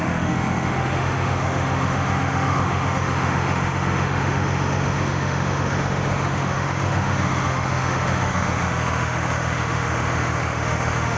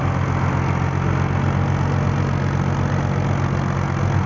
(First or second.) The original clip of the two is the second